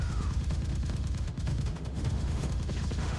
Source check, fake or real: fake